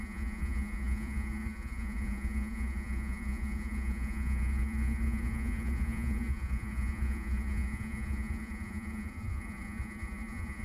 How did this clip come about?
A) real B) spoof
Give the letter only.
B